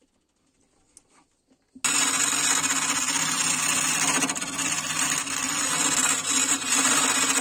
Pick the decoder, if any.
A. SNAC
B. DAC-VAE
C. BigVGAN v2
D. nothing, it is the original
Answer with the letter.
D